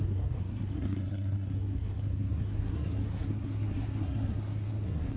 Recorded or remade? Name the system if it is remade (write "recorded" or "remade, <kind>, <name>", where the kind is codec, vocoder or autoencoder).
remade, codec, SNAC